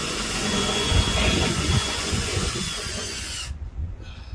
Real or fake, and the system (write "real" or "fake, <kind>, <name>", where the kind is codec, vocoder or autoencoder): fake, vocoder, Vocos